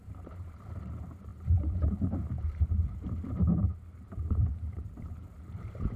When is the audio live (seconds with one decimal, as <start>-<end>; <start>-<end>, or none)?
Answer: none